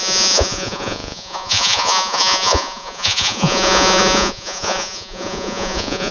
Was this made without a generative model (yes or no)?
no